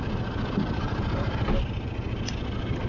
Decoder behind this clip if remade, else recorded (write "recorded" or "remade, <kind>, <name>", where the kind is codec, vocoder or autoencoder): recorded